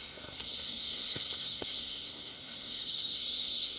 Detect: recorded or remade remade